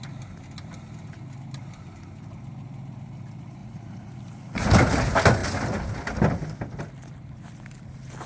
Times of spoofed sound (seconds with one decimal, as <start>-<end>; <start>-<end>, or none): 3.6-4.2